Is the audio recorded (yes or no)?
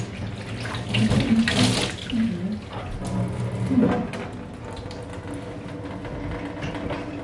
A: yes